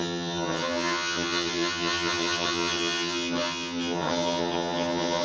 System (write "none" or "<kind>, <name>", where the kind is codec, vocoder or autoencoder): vocoder, HiFi-GAN